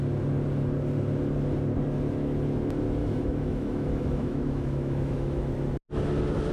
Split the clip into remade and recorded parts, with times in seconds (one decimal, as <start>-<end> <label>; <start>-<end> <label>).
0.0-3.0 recorded; 3.0-5.5 remade; 5.5-6.5 recorded